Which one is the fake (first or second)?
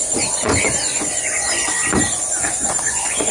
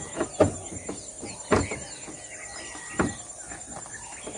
first